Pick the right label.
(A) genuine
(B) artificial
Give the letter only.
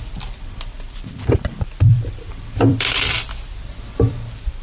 B